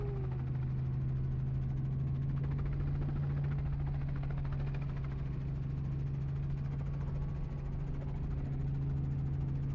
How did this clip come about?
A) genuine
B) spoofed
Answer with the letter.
A